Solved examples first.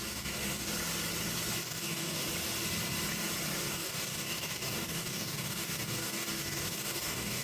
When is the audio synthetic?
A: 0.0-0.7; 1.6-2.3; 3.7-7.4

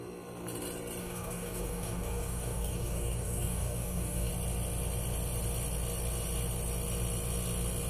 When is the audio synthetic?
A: 1.0-4.3

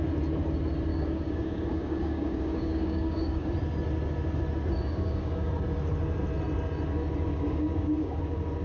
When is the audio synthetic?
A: 0.9-3.5; 4.9-5.5; 7.3-8.2

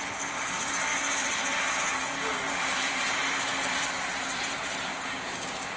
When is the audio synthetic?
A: 4.9-5.8

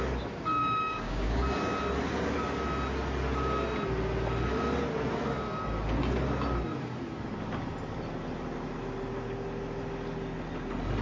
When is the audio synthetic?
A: 0.6-1.4

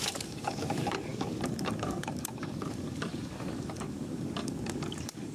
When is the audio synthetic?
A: 0.0-5.3